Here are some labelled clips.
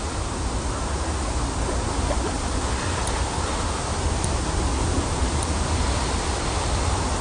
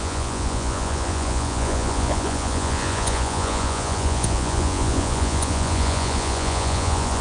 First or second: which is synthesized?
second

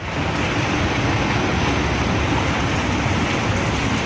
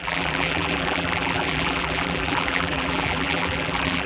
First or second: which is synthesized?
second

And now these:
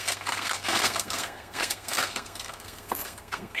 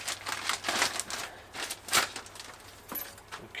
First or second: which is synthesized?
first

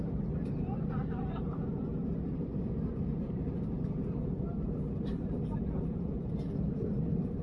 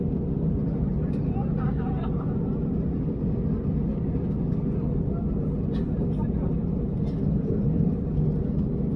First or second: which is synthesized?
first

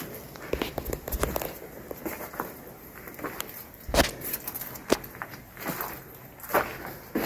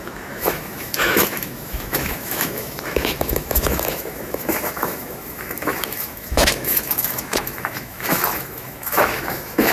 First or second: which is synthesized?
second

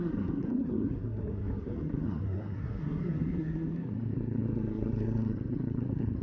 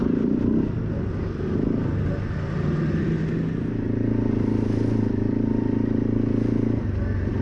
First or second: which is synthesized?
first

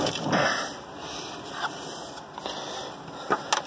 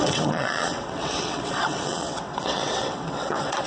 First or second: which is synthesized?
second